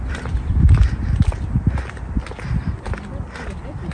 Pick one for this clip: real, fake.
real